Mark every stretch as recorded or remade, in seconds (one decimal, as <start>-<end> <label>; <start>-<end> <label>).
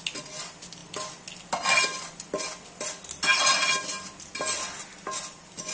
0.0-5.7 recorded